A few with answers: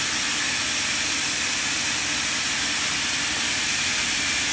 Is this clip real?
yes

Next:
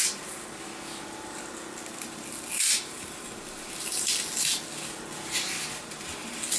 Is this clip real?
yes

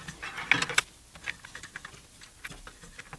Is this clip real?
yes